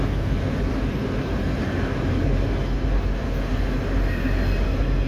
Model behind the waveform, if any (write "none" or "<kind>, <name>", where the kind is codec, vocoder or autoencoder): none